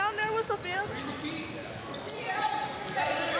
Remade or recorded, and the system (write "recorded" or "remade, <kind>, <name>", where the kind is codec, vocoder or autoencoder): recorded